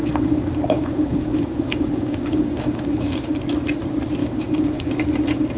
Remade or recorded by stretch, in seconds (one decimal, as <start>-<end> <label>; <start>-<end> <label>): 0.0-3.4 remade; 3.4-4.2 recorded; 4.2-4.9 remade; 4.9-5.6 recorded